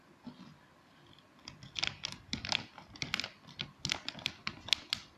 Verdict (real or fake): real